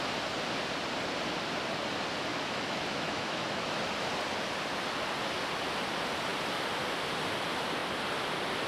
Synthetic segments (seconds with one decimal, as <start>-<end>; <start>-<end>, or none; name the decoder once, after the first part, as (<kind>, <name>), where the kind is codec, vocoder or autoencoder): 2.3-3.8 (autoencoder, DAC-VAE)

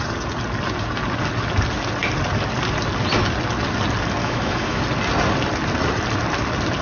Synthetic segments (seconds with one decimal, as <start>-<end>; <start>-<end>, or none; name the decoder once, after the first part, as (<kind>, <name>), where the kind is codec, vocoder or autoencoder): 4.2-4.8 (autoencoder, DAC-VAE)

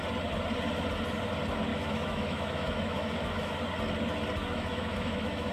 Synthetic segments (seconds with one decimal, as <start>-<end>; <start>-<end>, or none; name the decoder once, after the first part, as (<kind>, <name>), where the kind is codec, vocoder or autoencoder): 1.7-3.5 (autoencoder, DAC-VAE); 4.5-5.5

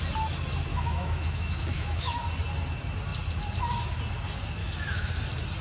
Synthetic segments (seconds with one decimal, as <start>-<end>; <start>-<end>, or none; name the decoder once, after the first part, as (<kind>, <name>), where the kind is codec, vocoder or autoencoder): 0.7-2.2 (autoencoder, DAC-VAE); 4.6-5.1

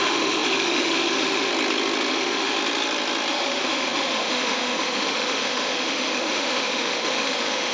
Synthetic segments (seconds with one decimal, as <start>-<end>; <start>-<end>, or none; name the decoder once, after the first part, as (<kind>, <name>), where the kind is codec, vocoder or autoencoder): 0.0-1.5 (autoencoder, DAC-VAE); 2.1-2.6; 3.3-7.7

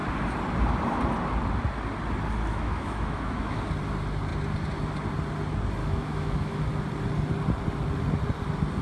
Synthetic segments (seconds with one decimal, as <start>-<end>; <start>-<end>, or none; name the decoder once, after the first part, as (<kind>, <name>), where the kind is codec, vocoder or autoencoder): 2.5-3.6 (autoencoder, DAC-VAE); 5.8-6.6

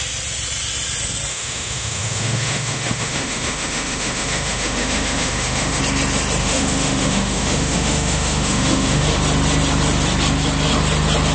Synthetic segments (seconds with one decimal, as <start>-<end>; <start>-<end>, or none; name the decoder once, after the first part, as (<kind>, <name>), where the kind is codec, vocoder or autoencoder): 1.3-5.8 (autoencoder, DAC-VAE); 6.4-9.1

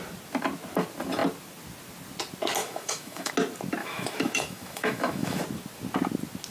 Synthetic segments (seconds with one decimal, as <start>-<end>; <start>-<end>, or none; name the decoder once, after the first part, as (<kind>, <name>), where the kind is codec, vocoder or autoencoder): 2.6-3.3 (autoencoder, DAC-VAE); 3.8-5.4